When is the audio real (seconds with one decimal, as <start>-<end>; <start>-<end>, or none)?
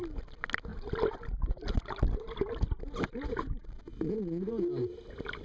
0.0-5.4